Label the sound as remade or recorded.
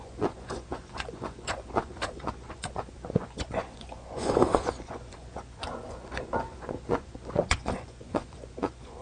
remade